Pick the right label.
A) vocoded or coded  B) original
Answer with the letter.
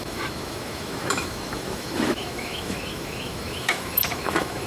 A